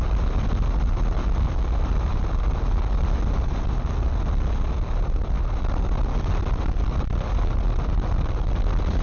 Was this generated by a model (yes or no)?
no